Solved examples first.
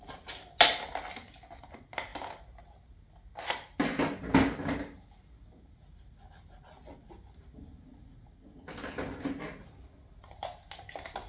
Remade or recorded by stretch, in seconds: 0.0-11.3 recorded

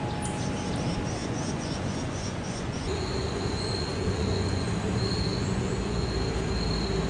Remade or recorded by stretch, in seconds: 0.0-1.2 recorded; 1.2-4.7 remade; 4.7-5.3 recorded; 5.3-6.1 remade; 6.1-7.1 recorded

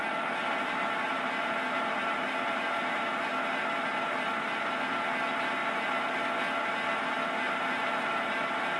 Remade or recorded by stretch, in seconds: 0.0-0.4 recorded; 0.4-3.3 remade; 3.3-8.8 recorded

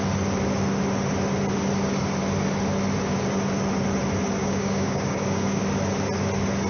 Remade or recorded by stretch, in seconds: 0.0-4.4 recorded; 4.4-5.6 remade; 5.6-6.7 recorded